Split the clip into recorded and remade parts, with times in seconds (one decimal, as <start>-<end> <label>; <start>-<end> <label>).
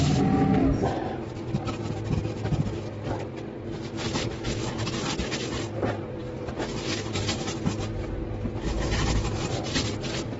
0.0-10.4 recorded